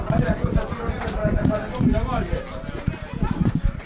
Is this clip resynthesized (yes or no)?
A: no